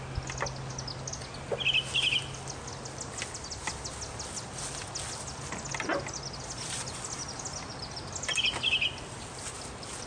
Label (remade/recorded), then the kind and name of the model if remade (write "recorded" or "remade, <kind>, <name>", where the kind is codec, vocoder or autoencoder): recorded